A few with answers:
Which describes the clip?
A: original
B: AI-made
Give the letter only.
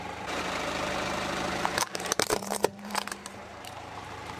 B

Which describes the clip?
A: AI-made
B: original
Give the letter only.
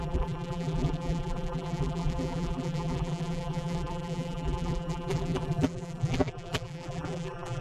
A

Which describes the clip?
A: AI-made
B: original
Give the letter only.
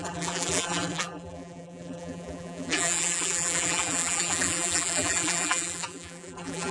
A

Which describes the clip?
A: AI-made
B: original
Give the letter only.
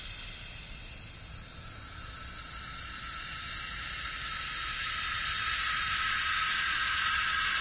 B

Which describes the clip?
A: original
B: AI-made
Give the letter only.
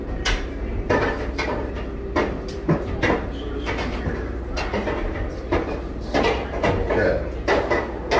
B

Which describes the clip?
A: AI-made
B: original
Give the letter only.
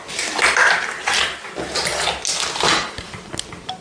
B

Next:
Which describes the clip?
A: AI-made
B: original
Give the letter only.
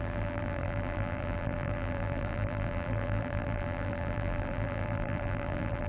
A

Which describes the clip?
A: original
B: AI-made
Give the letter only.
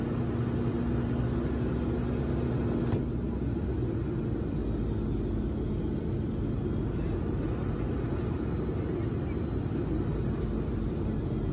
A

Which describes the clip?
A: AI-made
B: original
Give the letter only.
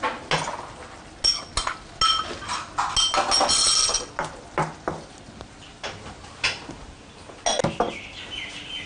B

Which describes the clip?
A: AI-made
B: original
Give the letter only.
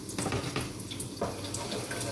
B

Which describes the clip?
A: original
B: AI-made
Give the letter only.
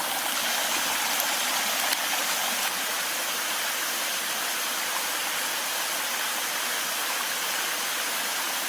A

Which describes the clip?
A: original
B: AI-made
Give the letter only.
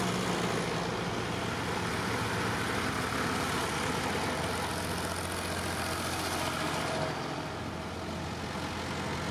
A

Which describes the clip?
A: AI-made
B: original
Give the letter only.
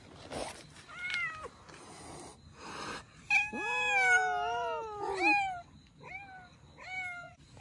B